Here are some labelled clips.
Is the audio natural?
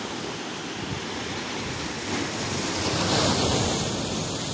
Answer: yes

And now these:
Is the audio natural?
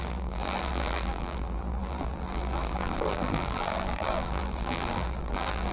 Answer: no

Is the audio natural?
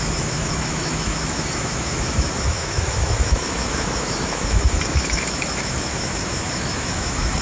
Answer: no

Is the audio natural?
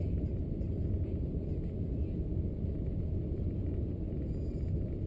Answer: yes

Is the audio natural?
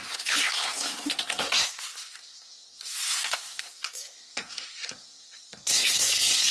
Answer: no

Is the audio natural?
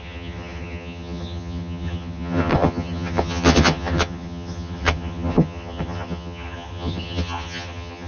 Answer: no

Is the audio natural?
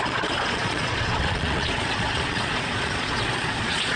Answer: no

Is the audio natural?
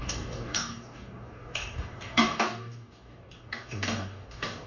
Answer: no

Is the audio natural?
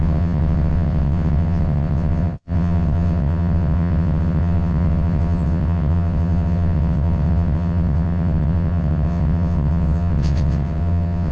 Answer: no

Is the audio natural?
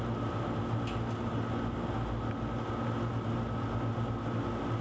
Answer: yes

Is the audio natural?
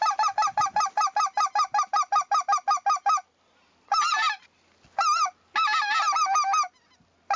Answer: yes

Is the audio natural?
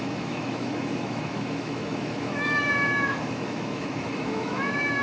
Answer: no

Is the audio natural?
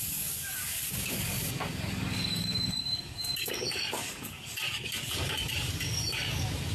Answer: no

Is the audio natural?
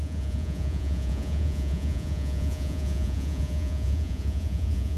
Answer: no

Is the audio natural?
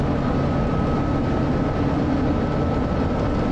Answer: yes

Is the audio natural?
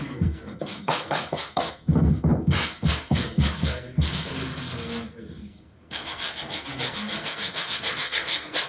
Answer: no